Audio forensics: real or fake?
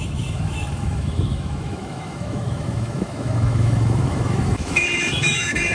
fake